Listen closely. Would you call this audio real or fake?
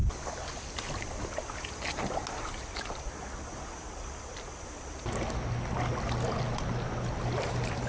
real